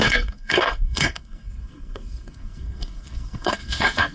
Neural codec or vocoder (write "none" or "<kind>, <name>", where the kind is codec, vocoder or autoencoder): codec, SNAC